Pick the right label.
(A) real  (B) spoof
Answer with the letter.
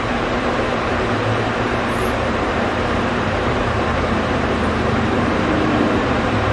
B